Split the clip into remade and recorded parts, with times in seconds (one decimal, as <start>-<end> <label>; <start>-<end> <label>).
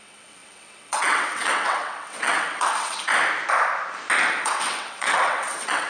0.0-3.1 remade; 3.1-4.3 recorded; 4.3-5.9 remade